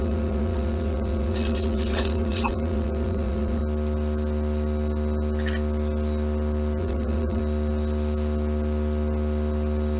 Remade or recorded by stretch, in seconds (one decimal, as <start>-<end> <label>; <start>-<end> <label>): 0.0-3.6 remade; 3.6-6.8 recorded; 6.8-7.4 remade; 7.4-10.0 recorded